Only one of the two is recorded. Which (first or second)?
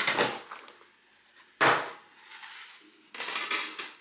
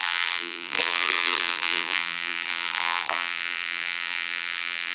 first